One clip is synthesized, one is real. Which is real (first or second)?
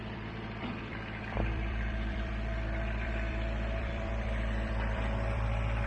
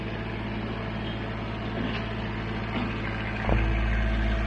second